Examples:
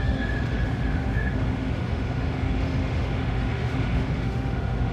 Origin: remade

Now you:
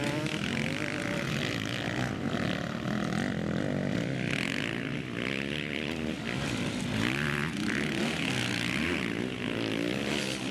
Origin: recorded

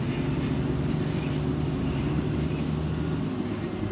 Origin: recorded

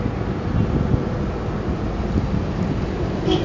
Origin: recorded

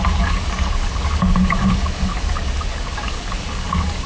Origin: remade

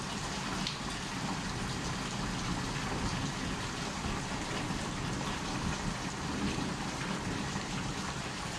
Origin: recorded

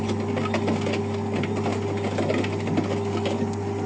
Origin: recorded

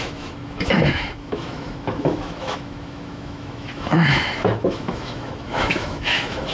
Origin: remade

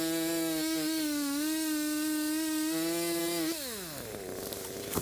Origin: recorded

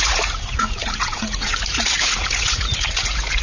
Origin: remade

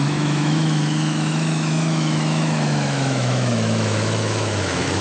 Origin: remade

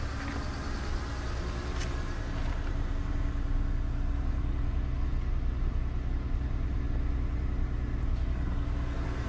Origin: recorded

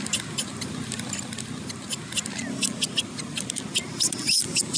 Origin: recorded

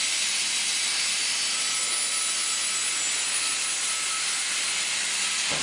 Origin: recorded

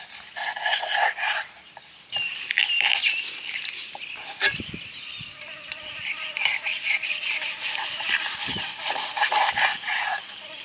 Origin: recorded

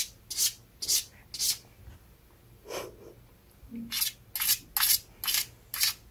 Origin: recorded